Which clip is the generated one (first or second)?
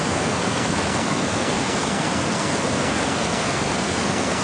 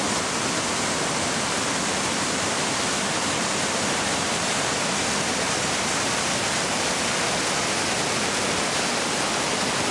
first